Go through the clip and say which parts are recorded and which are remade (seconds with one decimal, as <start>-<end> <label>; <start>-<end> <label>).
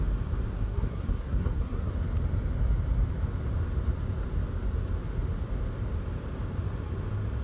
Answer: 0.0-0.5 recorded; 0.5-1.9 remade; 1.9-7.4 recorded